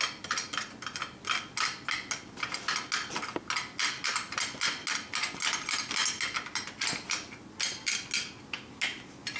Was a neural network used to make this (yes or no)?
no